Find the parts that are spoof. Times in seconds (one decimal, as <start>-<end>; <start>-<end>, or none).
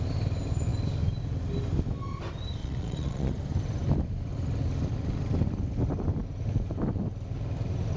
2.6-3.3